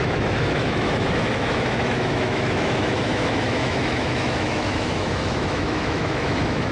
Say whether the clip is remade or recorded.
remade